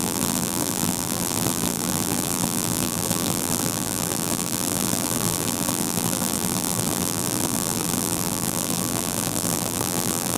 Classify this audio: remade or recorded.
remade